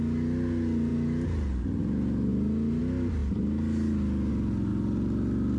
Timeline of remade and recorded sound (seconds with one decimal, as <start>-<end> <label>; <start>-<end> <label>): 0.0-5.6 recorded